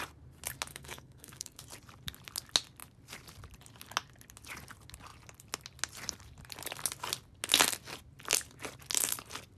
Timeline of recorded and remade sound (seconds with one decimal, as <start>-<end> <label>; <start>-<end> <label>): 0.0-0.7 recorded; 0.7-1.6 remade; 1.6-9.6 recorded